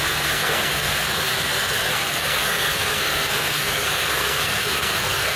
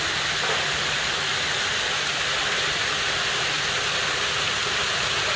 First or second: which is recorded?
second